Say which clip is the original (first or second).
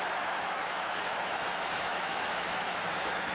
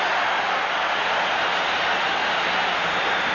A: second